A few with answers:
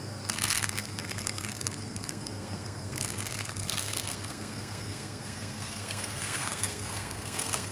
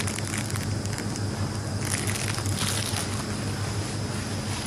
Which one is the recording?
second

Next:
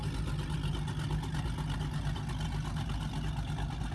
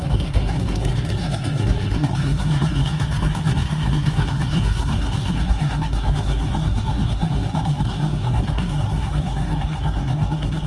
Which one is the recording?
first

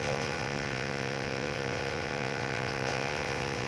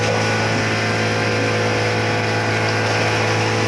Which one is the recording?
second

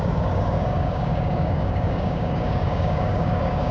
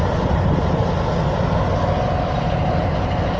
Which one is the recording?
second